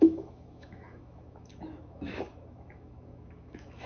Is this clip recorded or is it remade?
remade